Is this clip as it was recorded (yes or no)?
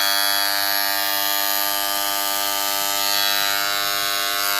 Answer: yes